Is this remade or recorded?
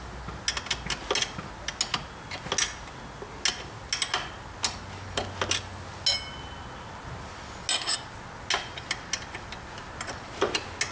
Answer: recorded